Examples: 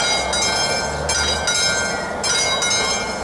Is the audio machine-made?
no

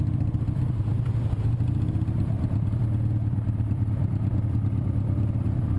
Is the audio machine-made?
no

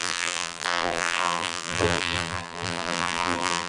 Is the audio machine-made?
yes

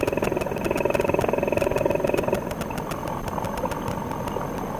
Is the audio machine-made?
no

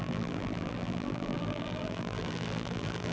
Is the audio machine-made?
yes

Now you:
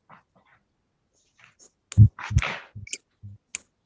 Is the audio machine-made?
no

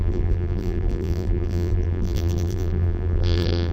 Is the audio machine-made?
yes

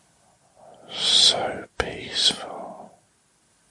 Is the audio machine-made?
no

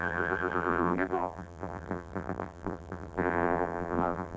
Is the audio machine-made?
yes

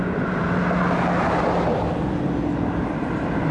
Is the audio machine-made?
no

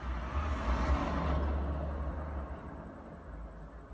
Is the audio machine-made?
no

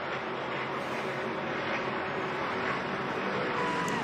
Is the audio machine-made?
no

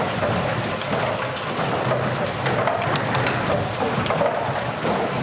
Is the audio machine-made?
no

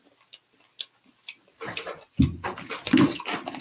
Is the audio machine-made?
no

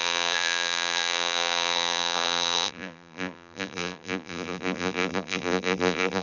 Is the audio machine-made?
yes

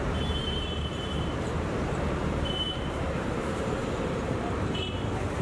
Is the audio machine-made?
yes